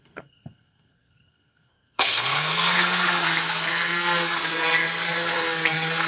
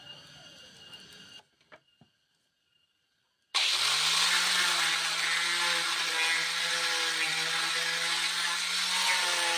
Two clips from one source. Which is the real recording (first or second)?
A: second